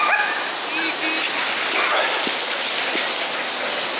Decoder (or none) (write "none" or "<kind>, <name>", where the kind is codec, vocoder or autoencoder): none